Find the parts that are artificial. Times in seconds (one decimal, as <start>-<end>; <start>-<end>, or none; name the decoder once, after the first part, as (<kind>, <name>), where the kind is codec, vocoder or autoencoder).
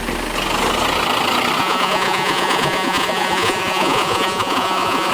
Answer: 1.6-5.1 (vocoder, Vocos)